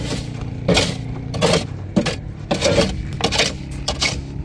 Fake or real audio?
real